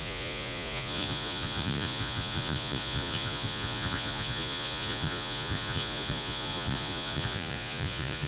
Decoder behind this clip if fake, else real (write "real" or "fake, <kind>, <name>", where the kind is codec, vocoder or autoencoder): fake, vocoder, Vocos